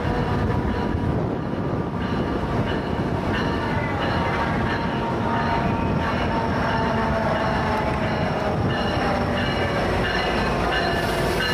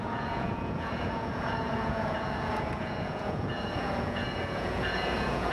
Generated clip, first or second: second